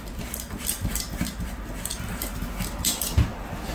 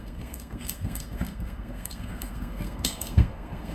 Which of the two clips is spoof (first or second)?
second